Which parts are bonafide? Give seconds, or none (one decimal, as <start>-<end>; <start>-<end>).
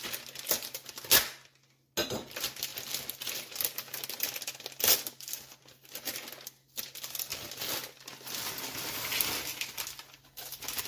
0.0-10.9